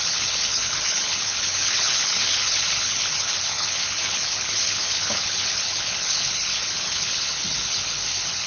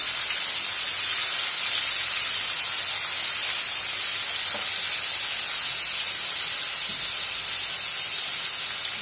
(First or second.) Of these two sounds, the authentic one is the second